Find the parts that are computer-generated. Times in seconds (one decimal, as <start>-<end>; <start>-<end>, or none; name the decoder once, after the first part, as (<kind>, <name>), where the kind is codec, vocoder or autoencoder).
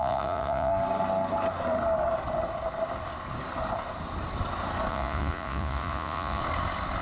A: 0.0-0.7 (vocoder, Vocos); 4.9-6.4